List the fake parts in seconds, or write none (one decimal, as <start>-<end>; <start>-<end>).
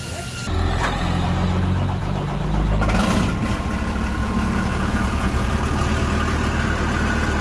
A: 4.2-5.5